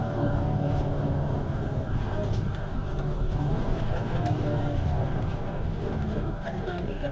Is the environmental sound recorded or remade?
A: remade